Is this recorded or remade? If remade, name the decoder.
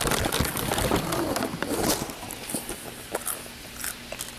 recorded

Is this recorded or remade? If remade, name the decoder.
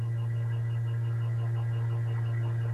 recorded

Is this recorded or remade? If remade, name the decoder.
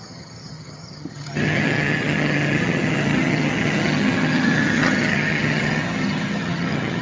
remade, vocoder, HiFi-GAN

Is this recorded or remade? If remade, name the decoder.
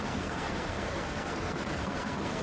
remade, codec, SNAC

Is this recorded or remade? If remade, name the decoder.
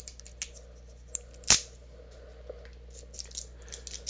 recorded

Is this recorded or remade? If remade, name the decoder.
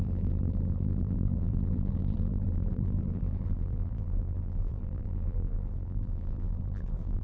remade, vocoder, BigVGAN v2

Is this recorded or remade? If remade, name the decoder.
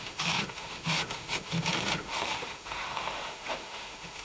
remade, autoencoder, DAC-VAE